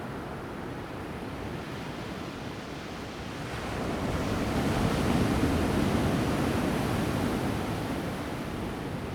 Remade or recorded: recorded